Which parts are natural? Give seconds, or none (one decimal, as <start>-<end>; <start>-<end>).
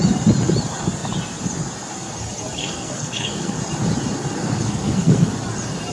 0.0-2.6; 3.6-4.4; 5.3-5.9